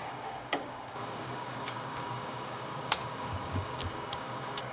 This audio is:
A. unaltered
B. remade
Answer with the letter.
B